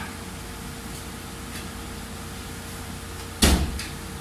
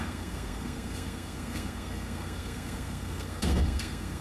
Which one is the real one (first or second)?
first